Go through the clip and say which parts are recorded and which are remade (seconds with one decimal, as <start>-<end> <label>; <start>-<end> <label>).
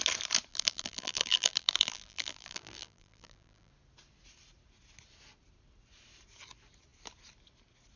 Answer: 0.0-0.5 recorded; 0.5-3.7 remade; 3.7-8.0 recorded